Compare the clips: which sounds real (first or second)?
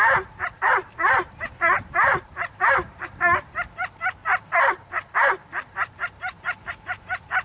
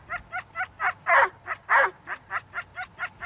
second